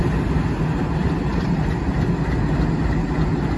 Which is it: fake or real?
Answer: real